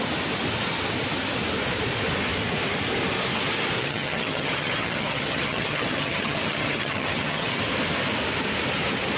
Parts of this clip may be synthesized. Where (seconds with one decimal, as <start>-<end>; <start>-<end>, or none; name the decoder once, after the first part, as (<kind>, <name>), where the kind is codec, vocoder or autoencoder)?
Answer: 3.8-7.6 (vocoder, HiFi-GAN)